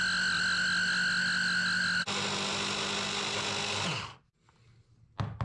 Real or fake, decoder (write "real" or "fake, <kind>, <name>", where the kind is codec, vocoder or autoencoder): real